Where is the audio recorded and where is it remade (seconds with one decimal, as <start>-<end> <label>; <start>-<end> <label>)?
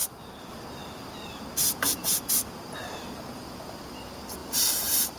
0.0-0.5 remade; 0.5-1.6 recorded; 1.6-2.2 remade; 2.2-4.4 recorded; 4.4-5.2 remade